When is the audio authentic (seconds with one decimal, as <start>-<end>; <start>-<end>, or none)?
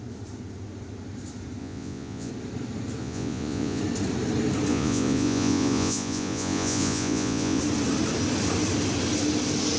0.0-1.6; 2.3-3.0; 3.8-4.7; 7.6-9.8